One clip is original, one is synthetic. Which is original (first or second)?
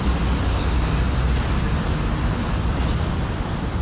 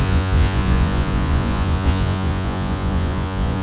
first